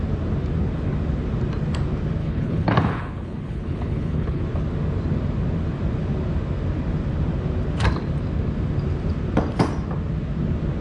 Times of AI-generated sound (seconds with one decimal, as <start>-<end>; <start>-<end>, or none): 2.2-4.4